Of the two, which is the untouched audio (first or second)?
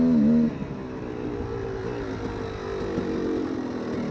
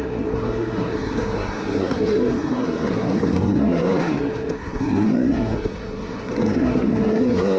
first